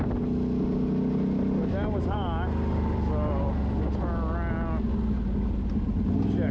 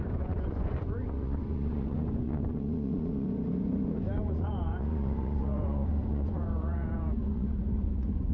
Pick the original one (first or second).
first